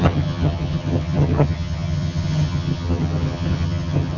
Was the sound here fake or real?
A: fake